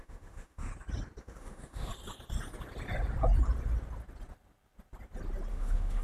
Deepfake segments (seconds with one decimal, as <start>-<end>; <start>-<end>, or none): 0.0-0.7; 1.2-1.9; 5.5-6.0